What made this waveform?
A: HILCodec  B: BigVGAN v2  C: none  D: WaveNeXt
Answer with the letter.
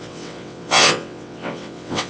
D